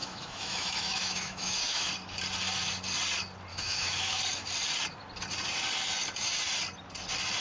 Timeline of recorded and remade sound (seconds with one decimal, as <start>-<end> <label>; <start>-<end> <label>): 0.0-1.9 remade; 1.9-3.5 recorded; 3.5-4.2 remade; 4.2-7.4 recorded